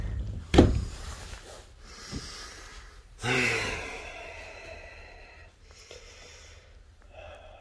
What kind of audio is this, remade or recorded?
recorded